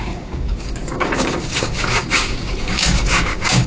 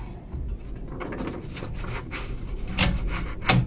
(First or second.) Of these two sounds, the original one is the second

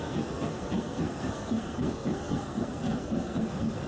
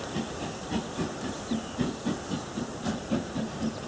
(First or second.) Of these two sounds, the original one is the second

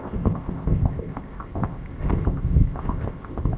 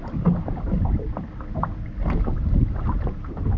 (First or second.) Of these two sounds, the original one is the second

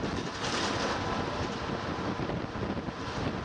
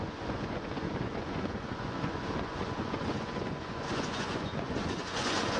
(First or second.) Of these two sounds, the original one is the first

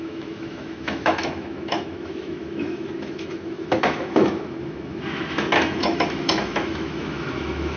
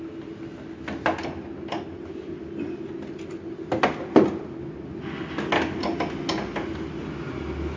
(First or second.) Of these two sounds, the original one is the second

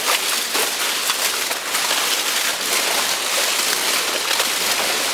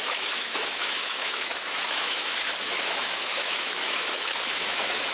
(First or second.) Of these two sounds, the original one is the first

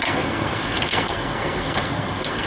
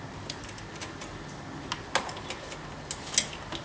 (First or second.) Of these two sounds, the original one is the second